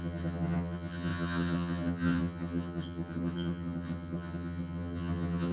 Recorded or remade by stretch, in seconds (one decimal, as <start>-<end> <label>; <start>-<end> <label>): 0.0-5.5 remade